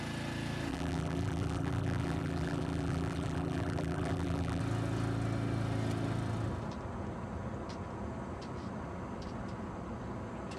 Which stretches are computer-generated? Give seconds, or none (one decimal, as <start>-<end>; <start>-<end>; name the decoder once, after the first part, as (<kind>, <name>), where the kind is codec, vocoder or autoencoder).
0.7-4.6 (vocoder, BigVGAN v2)